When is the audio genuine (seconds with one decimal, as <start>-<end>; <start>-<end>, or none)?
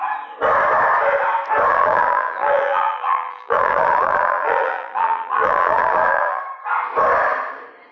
0.0-1.7; 6.4-7.9